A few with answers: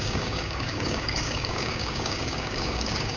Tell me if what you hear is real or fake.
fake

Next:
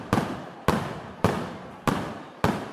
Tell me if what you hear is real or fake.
real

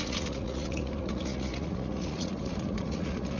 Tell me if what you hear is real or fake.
fake